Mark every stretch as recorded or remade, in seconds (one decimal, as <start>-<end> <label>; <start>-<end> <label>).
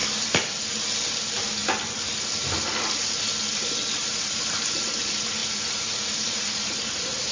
0.0-1.1 recorded; 1.1-1.6 remade; 1.6-3.9 recorded; 3.9-7.3 remade